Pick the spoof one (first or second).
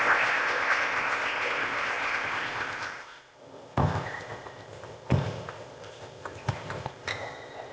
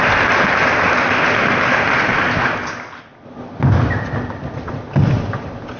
first